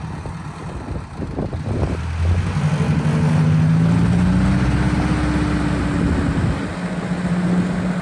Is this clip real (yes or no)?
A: yes